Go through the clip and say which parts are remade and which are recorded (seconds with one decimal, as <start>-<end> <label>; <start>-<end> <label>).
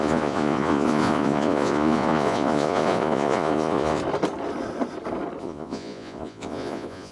0.0-4.0 remade; 4.0-5.4 recorded; 5.4-7.1 remade